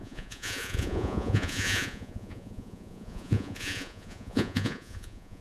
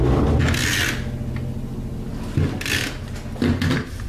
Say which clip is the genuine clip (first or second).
second